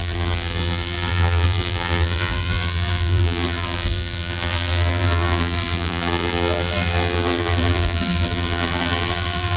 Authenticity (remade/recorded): remade